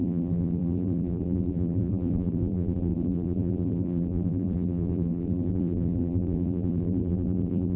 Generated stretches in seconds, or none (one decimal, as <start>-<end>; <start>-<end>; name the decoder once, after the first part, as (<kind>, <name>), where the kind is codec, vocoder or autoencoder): 0.0-7.8 (vocoder, BigVGAN v2)

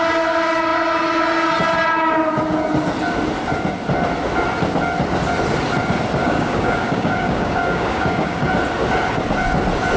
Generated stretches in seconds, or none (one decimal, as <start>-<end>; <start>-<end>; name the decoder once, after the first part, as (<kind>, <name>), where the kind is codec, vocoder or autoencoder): 6.2-8.5 (codec, DAC)